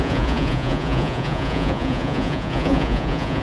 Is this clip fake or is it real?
fake